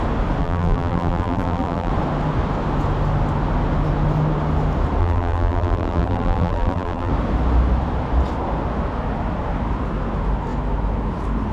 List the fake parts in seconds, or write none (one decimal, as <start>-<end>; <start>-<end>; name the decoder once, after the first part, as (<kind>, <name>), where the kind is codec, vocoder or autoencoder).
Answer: 0.4-1.9 (vocoder, BigVGAN v2); 5.0-7.1